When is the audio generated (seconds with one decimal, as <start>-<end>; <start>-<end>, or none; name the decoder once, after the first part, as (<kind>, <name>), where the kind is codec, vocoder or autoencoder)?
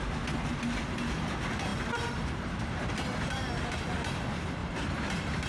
4.6-5.1 (vocoder, BigVGAN v2)